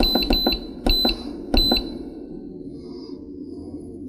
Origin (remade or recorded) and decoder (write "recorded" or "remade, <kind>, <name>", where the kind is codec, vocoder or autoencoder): recorded